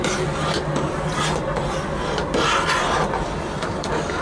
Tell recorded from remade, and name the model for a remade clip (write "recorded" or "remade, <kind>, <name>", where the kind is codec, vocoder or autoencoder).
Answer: remade, vocoder, BigVGAN v2